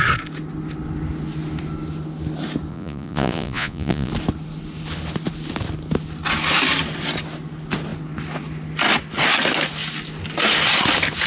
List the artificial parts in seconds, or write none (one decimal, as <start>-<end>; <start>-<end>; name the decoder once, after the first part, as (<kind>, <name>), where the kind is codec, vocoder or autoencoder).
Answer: 2.7-4.1 (vocoder, Vocos)